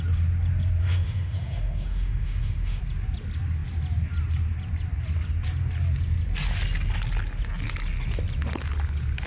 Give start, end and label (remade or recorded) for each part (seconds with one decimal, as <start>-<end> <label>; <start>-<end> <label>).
0.0-0.8 recorded; 0.8-2.8 remade; 2.8-9.3 recorded